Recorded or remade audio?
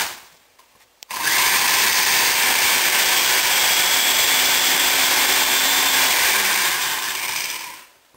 remade